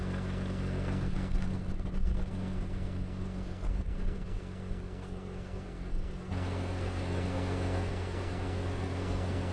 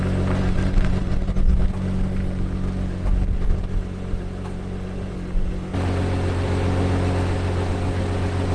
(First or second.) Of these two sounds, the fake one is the first